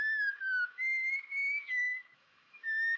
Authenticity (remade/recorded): remade